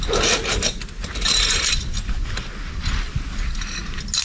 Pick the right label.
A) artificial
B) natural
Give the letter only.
B